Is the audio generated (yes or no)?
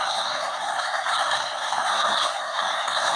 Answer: yes